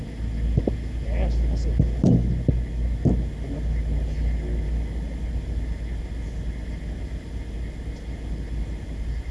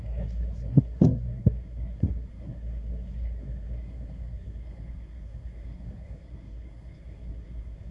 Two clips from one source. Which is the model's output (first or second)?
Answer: second